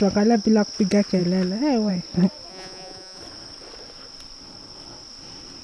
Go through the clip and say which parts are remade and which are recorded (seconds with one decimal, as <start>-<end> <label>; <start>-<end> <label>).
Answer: 0.0-2.5 recorded; 2.5-3.2 remade; 3.2-5.6 recorded